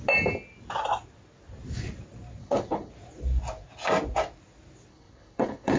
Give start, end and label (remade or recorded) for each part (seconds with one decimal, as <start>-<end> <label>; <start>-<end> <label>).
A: 0.0-2.4 recorded; 2.4-2.9 remade; 2.9-4.9 recorded; 4.9-5.8 remade